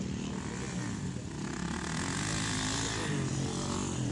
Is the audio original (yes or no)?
yes